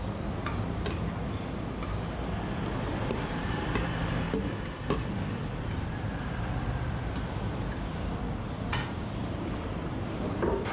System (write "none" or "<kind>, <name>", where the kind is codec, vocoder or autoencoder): none